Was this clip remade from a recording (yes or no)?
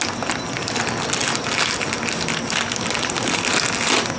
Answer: no